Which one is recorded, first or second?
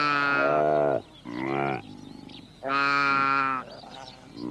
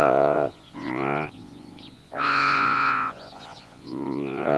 first